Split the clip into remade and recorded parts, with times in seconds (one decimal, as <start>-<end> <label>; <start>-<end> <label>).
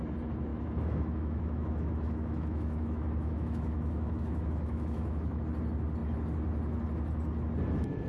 0.0-0.5 recorded; 0.5-5.4 remade; 5.4-8.1 recorded